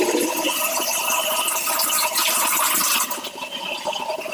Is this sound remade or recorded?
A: recorded